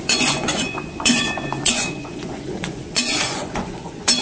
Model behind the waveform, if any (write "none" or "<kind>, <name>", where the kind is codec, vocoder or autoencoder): vocoder, Vocos